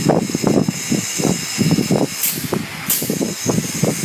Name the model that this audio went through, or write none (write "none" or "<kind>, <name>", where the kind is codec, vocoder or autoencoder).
none